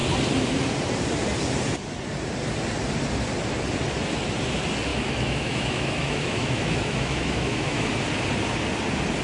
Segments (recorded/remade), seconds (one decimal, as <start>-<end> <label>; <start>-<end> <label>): 0.0-4.9 recorded; 4.9-7.9 remade; 7.9-9.2 recorded